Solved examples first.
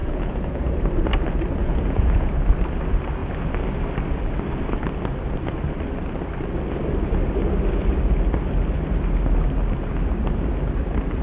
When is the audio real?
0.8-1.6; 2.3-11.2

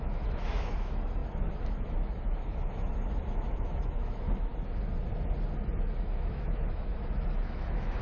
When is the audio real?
4.5-6.0